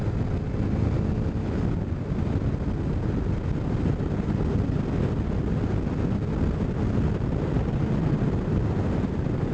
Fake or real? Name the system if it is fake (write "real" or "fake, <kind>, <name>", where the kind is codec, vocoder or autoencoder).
real